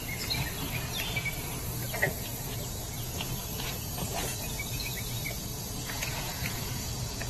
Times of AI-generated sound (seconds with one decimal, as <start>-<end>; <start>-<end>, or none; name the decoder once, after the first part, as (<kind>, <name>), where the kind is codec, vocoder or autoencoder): 2.3-4.9 (vocoder, Vocos); 5.5-7.3